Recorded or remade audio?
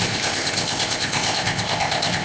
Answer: remade